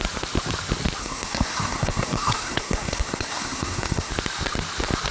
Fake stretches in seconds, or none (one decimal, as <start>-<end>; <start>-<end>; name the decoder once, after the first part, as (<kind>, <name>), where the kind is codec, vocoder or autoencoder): 1.0-4.1 (codec, SNAC)